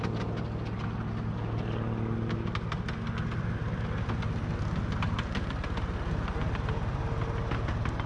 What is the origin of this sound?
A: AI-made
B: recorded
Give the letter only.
B